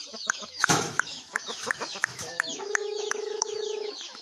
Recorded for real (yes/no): no